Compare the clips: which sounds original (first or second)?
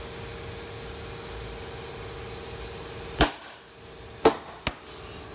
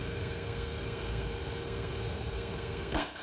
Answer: first